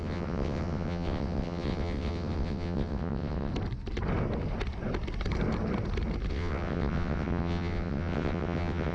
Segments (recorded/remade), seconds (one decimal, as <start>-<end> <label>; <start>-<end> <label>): 0.0-3.5 remade; 3.5-6.3 recorded; 6.3-8.9 remade